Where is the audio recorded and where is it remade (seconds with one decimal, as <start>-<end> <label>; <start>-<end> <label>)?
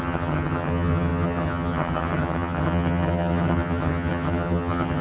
0.0-5.0 remade